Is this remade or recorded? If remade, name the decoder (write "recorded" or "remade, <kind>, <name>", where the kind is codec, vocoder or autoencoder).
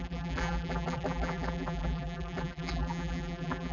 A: remade, vocoder, BigVGAN v2